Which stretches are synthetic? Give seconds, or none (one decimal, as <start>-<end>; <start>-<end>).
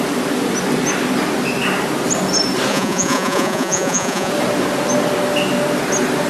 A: 2.7-4.3